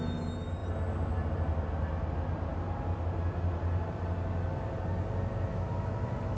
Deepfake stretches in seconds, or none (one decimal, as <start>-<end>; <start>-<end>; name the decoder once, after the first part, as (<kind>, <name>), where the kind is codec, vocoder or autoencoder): 5.5-6.4 (autoencoder, DAC-VAE)